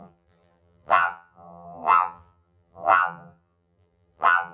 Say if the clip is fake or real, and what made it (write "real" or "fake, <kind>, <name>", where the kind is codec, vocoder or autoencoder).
fake, vocoder, BigVGAN v2